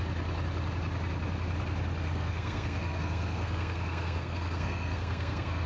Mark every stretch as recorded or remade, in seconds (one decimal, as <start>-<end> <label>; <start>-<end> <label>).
0.0-2.1 recorded; 2.1-5.7 remade